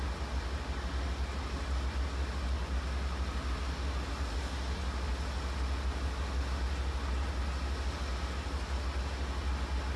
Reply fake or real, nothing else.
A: real